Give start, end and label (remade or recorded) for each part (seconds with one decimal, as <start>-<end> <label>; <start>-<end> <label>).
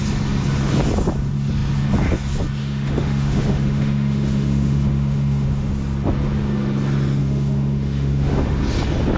0.0-2.6 recorded; 2.6-5.7 remade; 5.7-7.2 recorded; 7.2-8.6 remade; 8.6-9.2 recorded